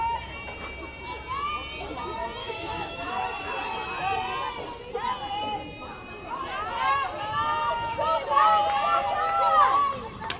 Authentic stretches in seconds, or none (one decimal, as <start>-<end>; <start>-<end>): 0.0-2.4; 3.1-10.4

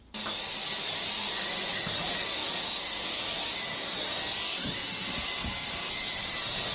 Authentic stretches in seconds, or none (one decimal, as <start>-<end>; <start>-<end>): 0.0-6.7

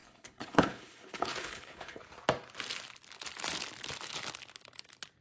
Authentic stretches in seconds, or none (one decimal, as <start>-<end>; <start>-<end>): 2.0-5.2